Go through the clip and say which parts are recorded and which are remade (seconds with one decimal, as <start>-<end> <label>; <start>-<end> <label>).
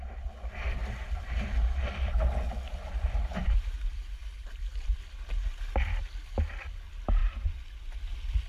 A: 0.0-0.8 recorded; 0.8-2.1 remade; 2.1-8.5 recorded